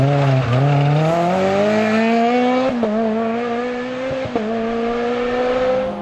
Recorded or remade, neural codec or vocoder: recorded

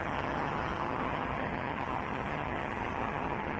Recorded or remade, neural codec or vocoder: remade, vocoder, HiFi-GAN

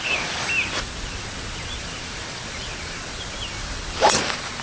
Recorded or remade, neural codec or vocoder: recorded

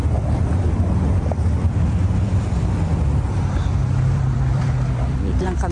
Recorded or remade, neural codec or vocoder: remade, vocoder, BigVGAN v2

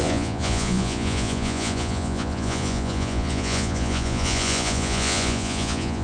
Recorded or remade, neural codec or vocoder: remade, vocoder, Vocos